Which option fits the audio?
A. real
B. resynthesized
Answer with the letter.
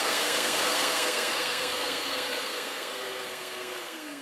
B